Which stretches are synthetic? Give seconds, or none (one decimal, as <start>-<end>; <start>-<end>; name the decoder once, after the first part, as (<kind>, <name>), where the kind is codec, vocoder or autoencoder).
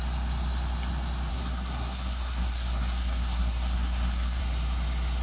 1.3-4.4 (codec, SNAC)